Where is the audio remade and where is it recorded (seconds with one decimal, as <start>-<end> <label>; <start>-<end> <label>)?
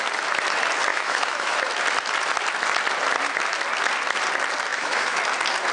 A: 0.0-0.9 recorded; 0.9-1.6 remade; 1.6-4.7 recorded; 4.7-5.2 remade; 5.2-5.7 recorded